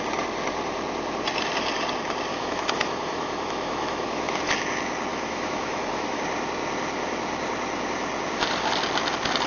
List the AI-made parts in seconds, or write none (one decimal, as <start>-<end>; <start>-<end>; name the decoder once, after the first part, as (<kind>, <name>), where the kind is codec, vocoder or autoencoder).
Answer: 2.3-4.5 (autoencoder, DAC-VAE); 5.1-6.2